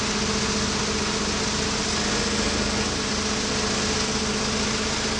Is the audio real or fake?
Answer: real